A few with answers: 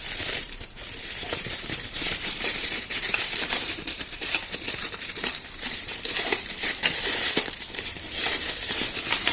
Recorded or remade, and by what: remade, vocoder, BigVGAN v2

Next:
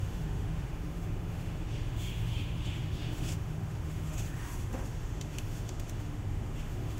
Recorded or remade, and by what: remade, autoencoder, DAC-VAE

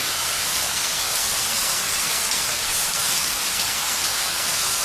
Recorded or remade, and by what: remade, codec, SNAC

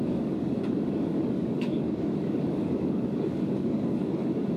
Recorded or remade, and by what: remade, codec, DAC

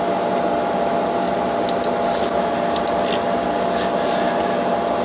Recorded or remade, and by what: recorded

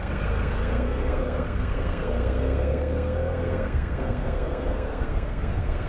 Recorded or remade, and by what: remade, codec, SNAC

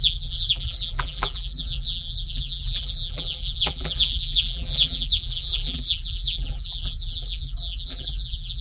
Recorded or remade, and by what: remade, vocoder, BigVGAN v2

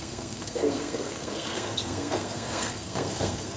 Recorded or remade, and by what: remade, codec, SNAC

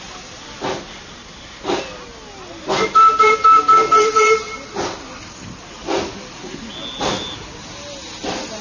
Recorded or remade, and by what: recorded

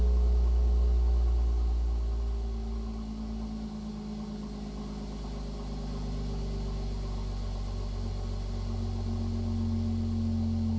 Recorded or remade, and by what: recorded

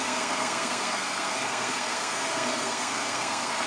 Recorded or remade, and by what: remade, codec, SNAC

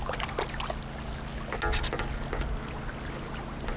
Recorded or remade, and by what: recorded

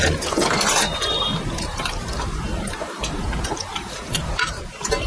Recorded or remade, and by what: remade, vocoder, BigVGAN v2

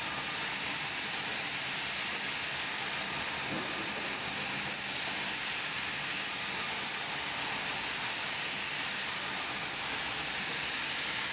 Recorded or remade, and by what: recorded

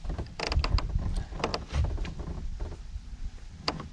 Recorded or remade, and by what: remade, vocoder, BigVGAN v2